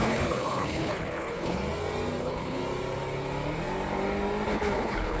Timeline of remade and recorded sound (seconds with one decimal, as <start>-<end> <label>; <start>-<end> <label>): 0.0-1.6 remade; 1.6-2.2 recorded; 2.2-2.6 remade; 2.6-4.5 recorded; 4.5-5.2 remade